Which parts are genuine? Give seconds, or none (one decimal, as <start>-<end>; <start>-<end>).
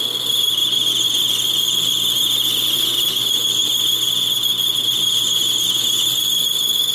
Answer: 0.0-6.9